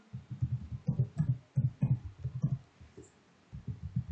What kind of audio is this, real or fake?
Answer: real